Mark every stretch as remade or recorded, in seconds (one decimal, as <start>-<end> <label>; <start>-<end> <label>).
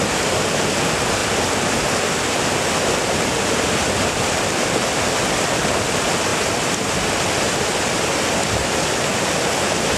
0.0-10.0 recorded